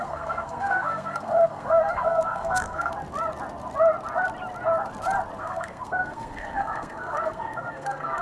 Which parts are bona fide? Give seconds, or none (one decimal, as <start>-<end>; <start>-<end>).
2.9-5.4